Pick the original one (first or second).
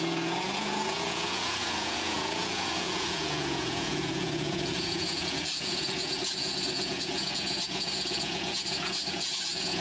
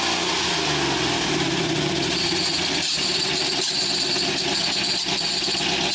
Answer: second